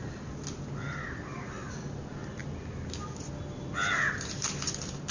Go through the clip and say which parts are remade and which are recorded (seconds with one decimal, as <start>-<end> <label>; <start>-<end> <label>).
0.0-5.1 recorded

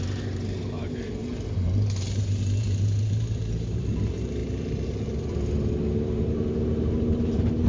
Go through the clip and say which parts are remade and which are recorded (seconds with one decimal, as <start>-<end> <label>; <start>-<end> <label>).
0.0-1.2 remade; 1.2-2.6 recorded; 2.6-4.4 remade; 4.4-6.2 recorded; 6.2-7.7 remade

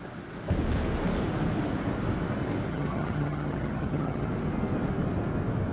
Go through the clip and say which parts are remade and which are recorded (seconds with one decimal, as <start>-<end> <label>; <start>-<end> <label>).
0.0-2.7 recorded; 2.7-4.3 remade; 4.3-5.7 recorded

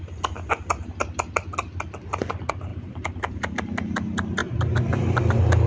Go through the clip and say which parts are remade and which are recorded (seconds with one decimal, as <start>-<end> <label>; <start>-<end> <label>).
0.0-2.7 recorded; 2.7-3.5 remade; 3.5-4.4 recorded; 4.4-5.2 remade; 5.2-5.7 recorded

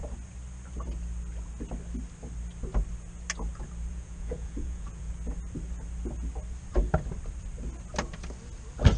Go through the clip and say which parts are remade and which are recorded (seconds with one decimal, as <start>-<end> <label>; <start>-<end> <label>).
0.0-3.9 recorded; 3.9-5.1 remade; 5.1-9.0 recorded

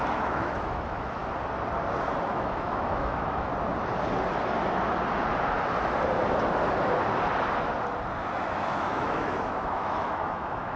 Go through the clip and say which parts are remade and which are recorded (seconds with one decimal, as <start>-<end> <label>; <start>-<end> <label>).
0.0-1.2 remade; 1.2-2.3 recorded; 2.3-3.5 remade; 3.5-8.4 recorded; 8.4-10.8 remade

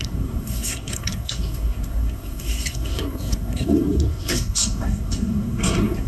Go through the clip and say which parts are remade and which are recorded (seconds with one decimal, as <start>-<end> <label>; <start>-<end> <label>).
0.0-6.1 remade

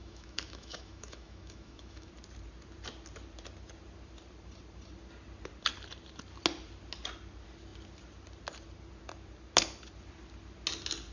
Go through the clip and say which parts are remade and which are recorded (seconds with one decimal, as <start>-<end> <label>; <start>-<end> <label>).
0.0-2.1 remade; 2.1-11.1 recorded